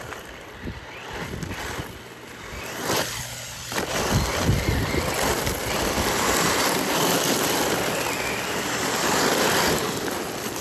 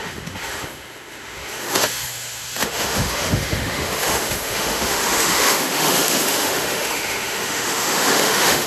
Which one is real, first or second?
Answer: first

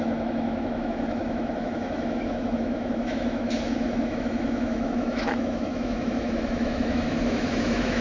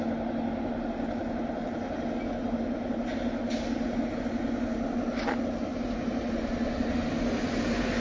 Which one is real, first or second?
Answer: second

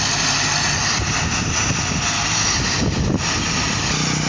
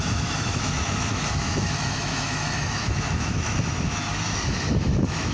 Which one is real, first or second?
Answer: first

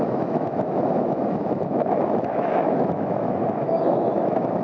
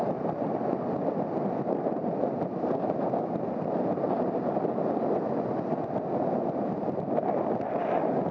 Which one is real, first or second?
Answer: second